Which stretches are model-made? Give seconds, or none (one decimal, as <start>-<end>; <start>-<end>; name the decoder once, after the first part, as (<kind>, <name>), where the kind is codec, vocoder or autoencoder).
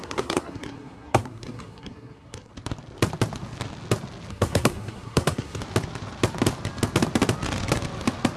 0.0-2.5 (codec, SNAC); 4.3-5.6